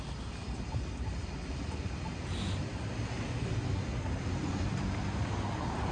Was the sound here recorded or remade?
recorded